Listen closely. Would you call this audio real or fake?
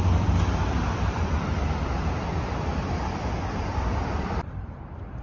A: fake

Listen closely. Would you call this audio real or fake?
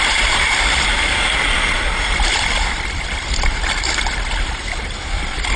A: fake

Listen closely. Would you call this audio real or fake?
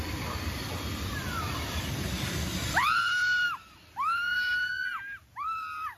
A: fake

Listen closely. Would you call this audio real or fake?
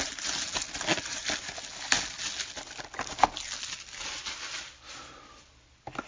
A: real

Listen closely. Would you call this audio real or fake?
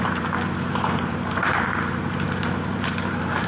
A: fake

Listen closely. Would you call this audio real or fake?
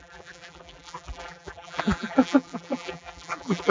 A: fake